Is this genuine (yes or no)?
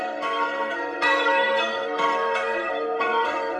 no